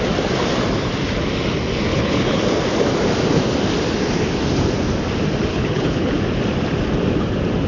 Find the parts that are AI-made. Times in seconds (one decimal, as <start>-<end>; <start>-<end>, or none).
1.9-2.4; 5.5-6.1